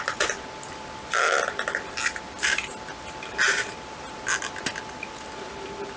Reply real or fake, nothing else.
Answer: real